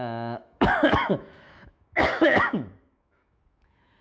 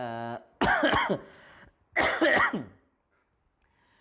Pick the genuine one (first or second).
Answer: second